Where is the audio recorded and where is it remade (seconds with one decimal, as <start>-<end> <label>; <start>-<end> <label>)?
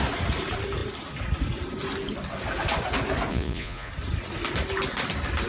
0.0-3.3 recorded; 3.3-3.9 remade; 3.9-5.5 recorded